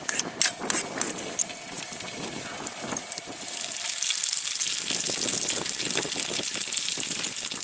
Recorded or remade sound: recorded